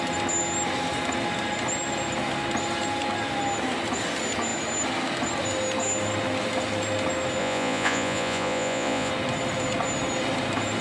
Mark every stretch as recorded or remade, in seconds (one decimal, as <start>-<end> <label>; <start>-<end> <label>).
0.0-7.4 recorded; 7.4-9.1 remade; 9.1-10.8 recorded